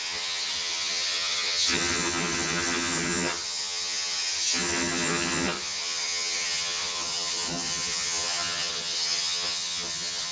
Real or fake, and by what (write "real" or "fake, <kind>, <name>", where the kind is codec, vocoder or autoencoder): fake, vocoder, HiFi-GAN